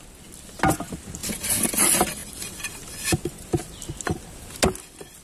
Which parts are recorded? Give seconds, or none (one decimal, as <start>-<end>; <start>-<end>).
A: 0.0-5.2